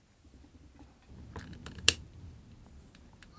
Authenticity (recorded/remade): recorded